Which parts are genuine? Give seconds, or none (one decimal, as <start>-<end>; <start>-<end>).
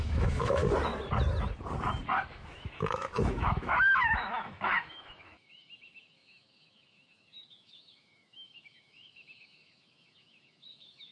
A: 0.6-2.3